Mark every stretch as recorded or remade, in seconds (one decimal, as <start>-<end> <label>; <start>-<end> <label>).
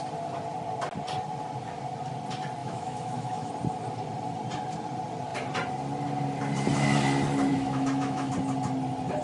0.0-2.6 recorded; 2.6-3.5 remade; 3.5-7.5 recorded; 7.5-8.3 remade; 8.3-9.2 recorded